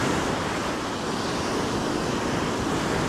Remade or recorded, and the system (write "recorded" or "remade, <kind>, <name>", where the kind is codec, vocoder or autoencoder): recorded